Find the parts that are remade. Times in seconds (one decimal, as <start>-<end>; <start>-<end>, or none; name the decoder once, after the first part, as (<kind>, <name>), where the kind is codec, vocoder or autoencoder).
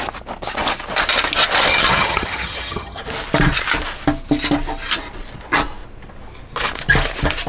1.7-3.0 (vocoder, HiFi-GAN)